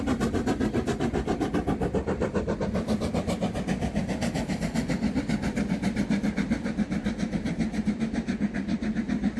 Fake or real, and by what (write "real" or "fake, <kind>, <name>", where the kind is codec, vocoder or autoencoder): real